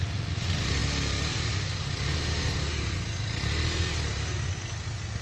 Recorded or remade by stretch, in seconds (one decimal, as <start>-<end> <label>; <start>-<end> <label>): 0.0-5.2 recorded